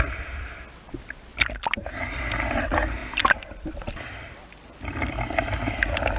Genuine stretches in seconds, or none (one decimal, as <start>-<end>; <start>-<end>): none